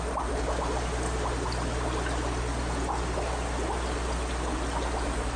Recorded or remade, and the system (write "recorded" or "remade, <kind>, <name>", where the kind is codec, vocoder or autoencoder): recorded